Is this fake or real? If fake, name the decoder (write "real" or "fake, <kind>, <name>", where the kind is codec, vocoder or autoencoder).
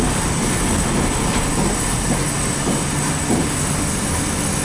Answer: real